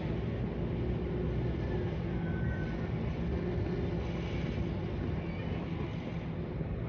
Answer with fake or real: real